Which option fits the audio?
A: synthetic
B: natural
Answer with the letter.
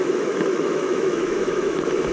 A